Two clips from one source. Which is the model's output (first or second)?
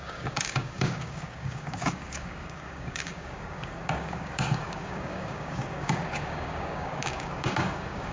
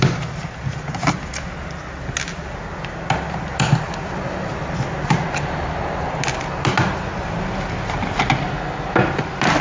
first